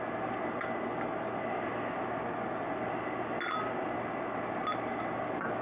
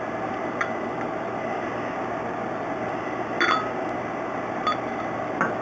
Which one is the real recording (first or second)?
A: first